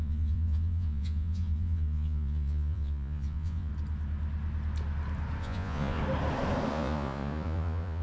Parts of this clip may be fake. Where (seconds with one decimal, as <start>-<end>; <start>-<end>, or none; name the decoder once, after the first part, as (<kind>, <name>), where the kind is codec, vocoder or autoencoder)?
0.0-3.7 (vocoder, Vocos); 5.4-6.0; 6.7-8.0